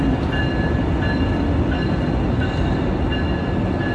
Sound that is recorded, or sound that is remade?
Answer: recorded